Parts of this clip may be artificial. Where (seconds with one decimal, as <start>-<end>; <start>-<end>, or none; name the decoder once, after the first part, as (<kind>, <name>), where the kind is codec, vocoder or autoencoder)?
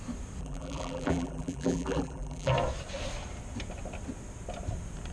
0.4-2.5 (vocoder, BigVGAN v2)